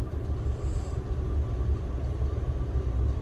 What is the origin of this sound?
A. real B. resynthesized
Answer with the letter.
A